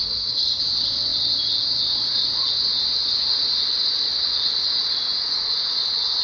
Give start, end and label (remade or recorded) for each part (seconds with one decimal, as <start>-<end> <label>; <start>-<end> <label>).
0.0-0.6 remade; 0.6-6.2 recorded